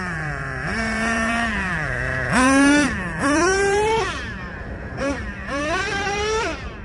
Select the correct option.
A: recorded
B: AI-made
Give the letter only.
B